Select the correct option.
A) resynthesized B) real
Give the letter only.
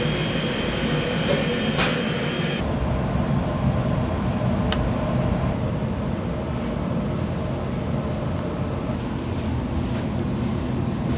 B